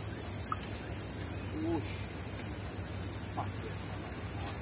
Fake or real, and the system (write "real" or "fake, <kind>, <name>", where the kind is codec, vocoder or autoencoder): real